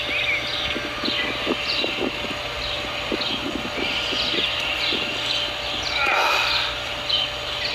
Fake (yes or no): no